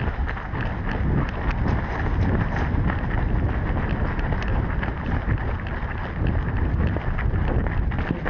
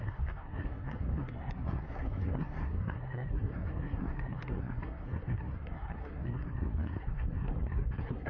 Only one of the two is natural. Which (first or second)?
first